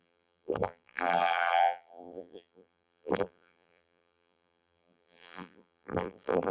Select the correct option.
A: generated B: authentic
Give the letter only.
A